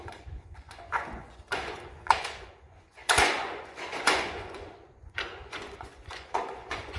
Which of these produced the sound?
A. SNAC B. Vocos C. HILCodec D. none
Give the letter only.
B